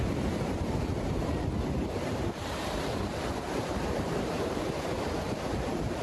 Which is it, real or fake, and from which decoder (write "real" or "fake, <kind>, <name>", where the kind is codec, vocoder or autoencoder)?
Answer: fake, vocoder, BigVGAN v2